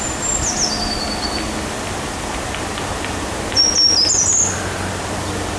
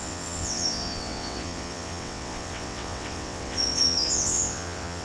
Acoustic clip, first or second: first